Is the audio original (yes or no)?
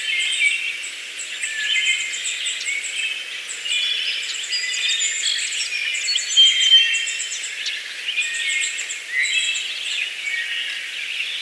yes